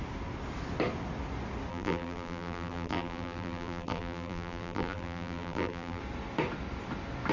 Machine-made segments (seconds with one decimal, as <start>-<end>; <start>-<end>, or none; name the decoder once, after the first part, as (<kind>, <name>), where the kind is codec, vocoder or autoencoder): 1.7-6.0 (vocoder, BigVGAN v2)